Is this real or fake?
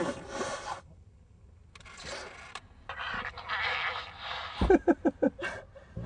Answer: real